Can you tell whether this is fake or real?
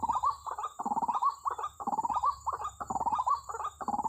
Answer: fake